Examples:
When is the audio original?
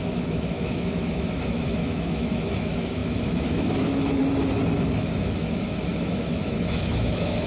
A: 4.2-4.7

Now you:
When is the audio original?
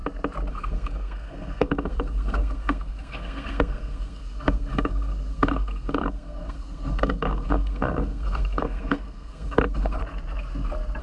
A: 0.0-0.5; 10.0-11.0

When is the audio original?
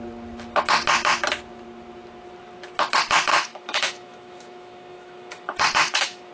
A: 0.0-3.3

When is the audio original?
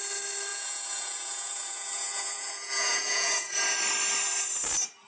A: 0.0-0.5; 3.6-5.1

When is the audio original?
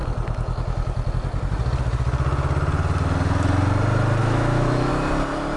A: 0.0-4.2; 4.9-5.6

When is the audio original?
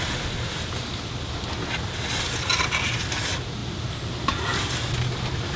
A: 0.0-5.6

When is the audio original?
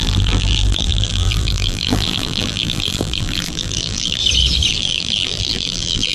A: 4.2-4.7